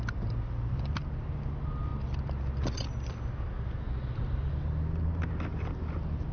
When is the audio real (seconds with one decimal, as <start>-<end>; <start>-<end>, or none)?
0.0-6.3